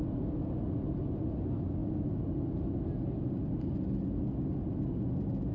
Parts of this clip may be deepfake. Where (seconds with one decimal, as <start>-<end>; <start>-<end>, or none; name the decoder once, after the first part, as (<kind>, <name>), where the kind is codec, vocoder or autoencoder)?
none